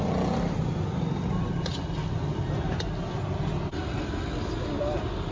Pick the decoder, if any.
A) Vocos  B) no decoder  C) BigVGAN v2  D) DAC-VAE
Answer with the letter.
B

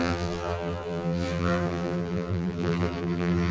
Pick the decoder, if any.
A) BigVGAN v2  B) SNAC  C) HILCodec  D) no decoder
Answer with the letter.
A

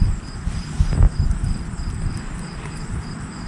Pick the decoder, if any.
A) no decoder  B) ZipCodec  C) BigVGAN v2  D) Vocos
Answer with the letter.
C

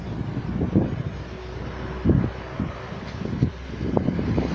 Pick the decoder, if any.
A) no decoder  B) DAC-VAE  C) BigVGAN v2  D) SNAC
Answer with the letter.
A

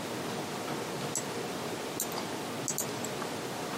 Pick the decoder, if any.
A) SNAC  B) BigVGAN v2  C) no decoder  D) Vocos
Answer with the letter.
C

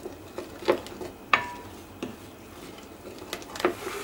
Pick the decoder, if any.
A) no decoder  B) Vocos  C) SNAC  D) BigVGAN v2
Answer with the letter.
A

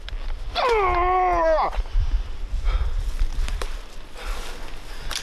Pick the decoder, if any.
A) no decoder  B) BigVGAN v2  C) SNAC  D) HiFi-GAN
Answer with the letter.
A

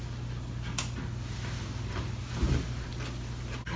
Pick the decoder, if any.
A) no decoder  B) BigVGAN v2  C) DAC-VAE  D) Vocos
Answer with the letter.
A